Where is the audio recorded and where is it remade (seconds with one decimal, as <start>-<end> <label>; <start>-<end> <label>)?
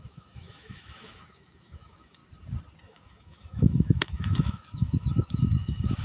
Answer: 0.0-2.2 remade; 2.2-2.8 recorded; 2.8-6.0 remade